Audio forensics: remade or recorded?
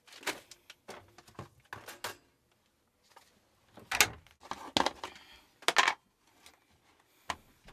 recorded